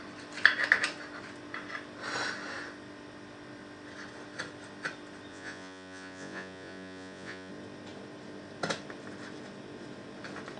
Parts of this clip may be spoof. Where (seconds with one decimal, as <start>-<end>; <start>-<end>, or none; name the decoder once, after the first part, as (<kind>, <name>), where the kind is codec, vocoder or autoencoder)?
5.3-7.5 (vocoder, Vocos)